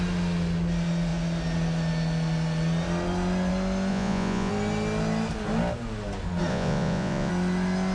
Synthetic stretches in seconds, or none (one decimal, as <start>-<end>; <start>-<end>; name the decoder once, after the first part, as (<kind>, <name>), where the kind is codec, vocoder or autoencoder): 3.9-4.5 (vocoder, Vocos); 6.5-7.3